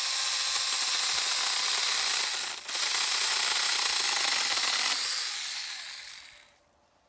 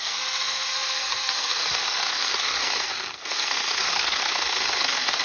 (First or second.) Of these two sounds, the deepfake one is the second